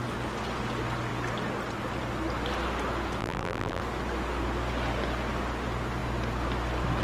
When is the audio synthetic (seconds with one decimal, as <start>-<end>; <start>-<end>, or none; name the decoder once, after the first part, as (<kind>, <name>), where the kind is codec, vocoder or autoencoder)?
3.2-3.8 (vocoder, BigVGAN v2)